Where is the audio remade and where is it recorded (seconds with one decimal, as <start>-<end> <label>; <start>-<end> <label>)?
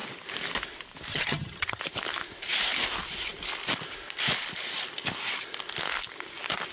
0.0-1.1 recorded; 1.1-1.8 remade; 1.8-6.7 recorded